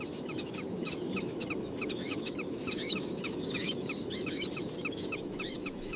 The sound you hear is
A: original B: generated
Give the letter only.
B